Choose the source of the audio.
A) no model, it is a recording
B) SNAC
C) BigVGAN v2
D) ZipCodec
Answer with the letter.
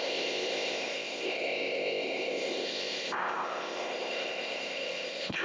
D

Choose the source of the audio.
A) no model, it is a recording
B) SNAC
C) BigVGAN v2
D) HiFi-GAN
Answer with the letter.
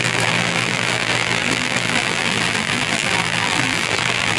C